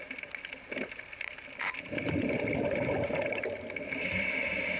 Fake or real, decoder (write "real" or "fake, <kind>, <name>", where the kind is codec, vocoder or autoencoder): real